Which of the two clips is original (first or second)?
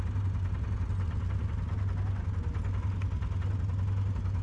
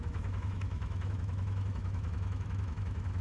first